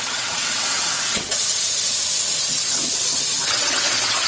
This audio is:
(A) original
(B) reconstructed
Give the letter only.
B